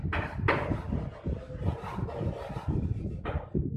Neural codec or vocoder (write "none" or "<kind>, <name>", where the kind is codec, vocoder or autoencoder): none